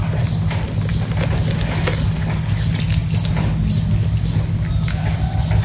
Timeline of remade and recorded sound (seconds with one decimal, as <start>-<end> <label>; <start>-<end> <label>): 0.0-5.6 recorded